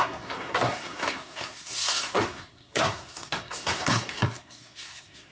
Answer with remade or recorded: remade